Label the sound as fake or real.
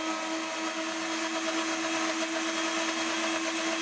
real